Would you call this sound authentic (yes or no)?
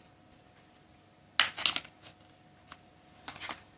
yes